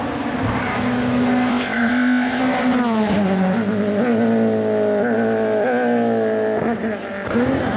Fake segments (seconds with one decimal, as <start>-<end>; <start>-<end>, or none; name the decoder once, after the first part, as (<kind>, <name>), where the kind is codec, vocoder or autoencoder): 1.5-2.4 (codec, ZipCodec)